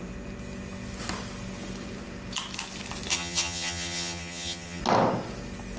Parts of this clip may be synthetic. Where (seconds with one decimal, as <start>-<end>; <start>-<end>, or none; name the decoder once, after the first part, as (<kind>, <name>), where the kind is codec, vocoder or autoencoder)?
3.1-4.8 (vocoder, HiFi-GAN)